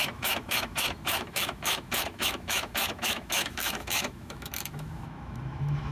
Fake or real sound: fake